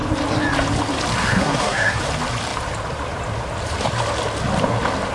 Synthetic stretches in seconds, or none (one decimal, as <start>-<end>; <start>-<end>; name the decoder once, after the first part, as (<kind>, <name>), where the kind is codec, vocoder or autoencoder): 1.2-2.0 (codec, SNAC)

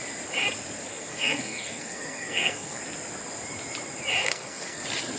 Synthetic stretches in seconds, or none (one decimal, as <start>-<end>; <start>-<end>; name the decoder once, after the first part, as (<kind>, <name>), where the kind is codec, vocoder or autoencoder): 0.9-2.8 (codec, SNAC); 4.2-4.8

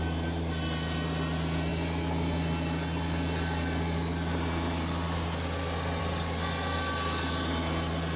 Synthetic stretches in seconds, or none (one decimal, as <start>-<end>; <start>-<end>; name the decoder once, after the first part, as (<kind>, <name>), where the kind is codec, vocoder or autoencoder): none

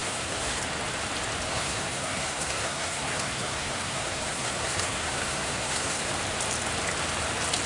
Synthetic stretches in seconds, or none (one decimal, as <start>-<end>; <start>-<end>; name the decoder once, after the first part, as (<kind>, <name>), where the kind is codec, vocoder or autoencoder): 0.0-0.6 (codec, SNAC); 1.5-6.1

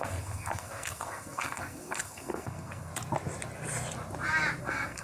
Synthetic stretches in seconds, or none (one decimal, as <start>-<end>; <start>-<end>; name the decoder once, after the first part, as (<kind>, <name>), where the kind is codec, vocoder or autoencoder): 0.0-2.9 (codec, SNAC); 4.6-5.0

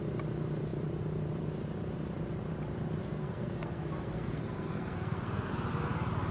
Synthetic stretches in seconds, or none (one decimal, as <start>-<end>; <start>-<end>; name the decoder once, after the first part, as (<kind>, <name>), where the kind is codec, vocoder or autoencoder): 3.0-5.5 (codec, SNAC)

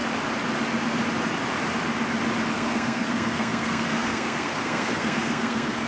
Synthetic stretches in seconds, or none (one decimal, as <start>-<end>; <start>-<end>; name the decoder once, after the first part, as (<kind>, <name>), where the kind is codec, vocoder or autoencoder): 2.5-5.9 (codec, SNAC)